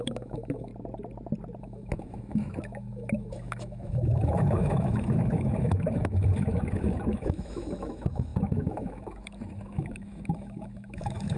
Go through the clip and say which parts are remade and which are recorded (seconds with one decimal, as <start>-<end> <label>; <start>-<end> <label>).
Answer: 0.0-0.7 remade; 0.7-1.6 recorded; 1.6-11.4 remade